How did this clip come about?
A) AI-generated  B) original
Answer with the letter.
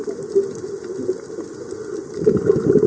B